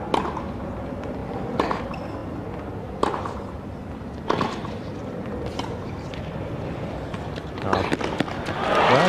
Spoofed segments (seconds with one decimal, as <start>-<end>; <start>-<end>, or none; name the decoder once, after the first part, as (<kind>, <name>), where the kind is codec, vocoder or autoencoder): 4.6-6.5 (vocoder, BigVGAN v2)